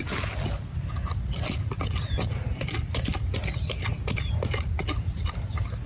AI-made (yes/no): no